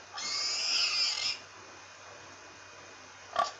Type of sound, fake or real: real